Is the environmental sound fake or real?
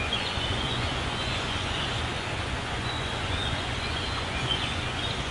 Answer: fake